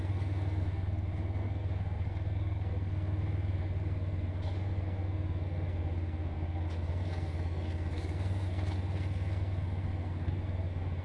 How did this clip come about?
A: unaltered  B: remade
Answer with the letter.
B